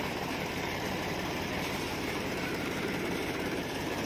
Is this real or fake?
fake